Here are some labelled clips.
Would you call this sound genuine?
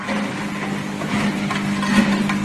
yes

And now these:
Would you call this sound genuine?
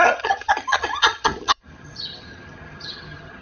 no